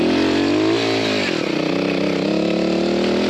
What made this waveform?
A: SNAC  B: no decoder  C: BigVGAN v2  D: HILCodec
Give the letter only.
B